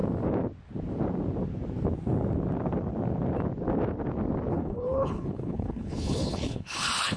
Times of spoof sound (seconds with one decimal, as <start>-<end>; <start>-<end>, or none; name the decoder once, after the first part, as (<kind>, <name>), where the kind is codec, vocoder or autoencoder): 4.5-7.2 (codec, HILCodec)